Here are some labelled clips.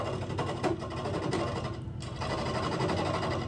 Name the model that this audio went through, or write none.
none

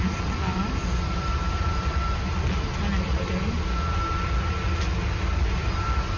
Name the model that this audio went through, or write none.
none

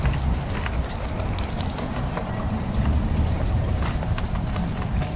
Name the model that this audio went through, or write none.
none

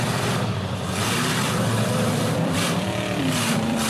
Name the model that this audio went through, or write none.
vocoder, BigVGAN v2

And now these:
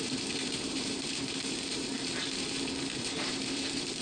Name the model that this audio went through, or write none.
vocoder, BigVGAN v2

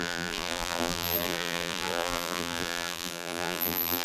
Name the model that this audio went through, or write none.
vocoder, BigVGAN v2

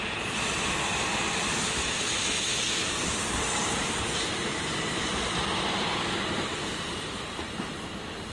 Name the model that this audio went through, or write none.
vocoder, BigVGAN v2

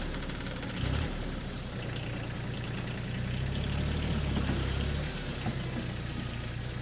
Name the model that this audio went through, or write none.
vocoder, BigVGAN v2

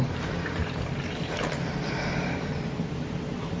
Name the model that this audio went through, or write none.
vocoder, BigVGAN v2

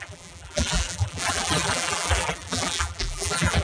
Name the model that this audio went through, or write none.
vocoder, BigVGAN v2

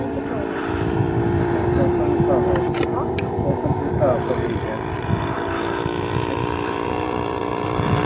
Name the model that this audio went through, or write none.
vocoder, BigVGAN v2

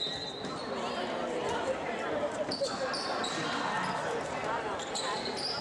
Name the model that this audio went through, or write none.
vocoder, BigVGAN v2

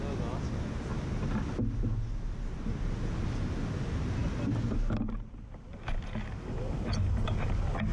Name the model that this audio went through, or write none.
none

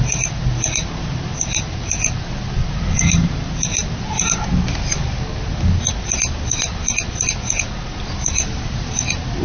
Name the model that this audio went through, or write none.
none